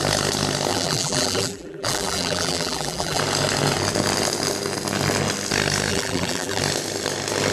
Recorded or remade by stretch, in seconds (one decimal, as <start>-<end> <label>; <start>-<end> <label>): 0.0-0.7 recorded; 0.7-3.2 remade; 3.2-5.9 recorded; 5.9-6.6 remade; 6.6-7.5 recorded